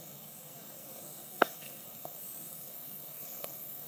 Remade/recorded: remade